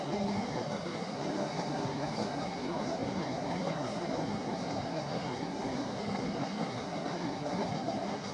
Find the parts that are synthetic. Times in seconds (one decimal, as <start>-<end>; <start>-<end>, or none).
0.0-8.3